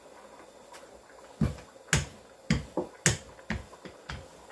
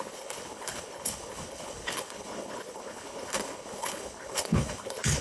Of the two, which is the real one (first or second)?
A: first